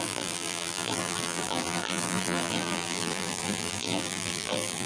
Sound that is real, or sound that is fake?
fake